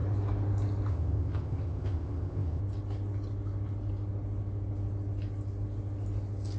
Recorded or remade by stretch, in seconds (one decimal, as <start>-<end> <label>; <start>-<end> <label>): 0.0-0.9 recorded; 0.9-2.6 remade; 2.6-6.6 recorded